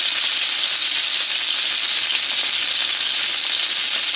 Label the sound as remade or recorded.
recorded